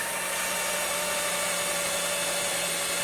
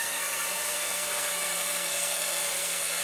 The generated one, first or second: second